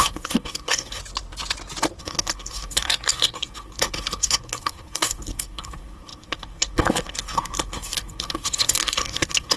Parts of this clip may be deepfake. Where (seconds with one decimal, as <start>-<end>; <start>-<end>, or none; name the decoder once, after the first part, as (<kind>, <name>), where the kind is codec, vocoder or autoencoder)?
0.0-1.0 (codec, SNAC); 2.0-9.6